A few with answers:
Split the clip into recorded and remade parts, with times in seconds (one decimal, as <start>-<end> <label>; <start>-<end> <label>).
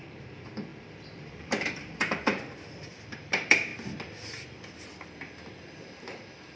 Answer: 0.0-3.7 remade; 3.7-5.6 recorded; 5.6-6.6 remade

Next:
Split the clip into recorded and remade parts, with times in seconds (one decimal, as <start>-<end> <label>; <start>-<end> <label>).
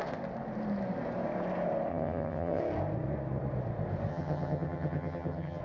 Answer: 0.0-1.9 recorded; 1.9-2.6 remade; 2.6-4.1 recorded; 4.1-5.6 remade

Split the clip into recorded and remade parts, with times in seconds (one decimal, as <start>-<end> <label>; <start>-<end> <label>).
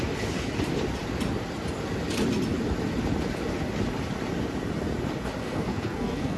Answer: 0.0-5.4 recorded; 5.4-6.4 remade